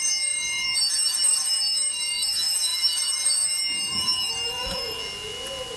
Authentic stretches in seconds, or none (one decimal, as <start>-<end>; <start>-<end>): 5.0-5.8

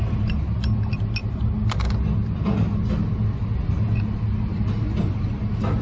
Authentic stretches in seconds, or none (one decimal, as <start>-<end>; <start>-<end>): 0.0-5.8

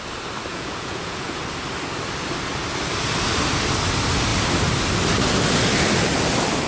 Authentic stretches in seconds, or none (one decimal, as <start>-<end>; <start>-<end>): 0.0-0.5; 1.4-6.7

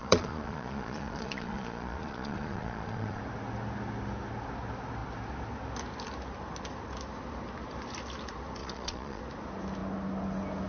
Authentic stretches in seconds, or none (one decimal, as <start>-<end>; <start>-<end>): 3.2-8.6; 9.2-10.7

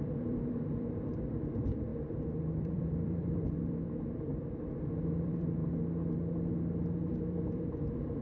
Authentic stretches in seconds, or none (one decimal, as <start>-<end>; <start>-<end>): 5.6-7.1